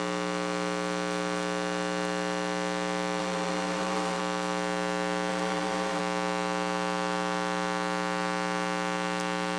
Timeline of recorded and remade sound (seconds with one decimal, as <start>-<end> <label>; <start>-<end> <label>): 0.0-3.2 recorded; 3.2-4.2 remade; 4.2-5.3 recorded; 5.3-6.0 remade; 6.0-9.6 recorded